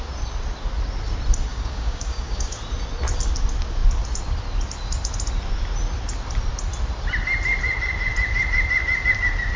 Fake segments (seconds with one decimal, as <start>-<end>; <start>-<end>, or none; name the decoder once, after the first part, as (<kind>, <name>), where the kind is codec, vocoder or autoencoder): 1.5-2.6 (codec, DAC)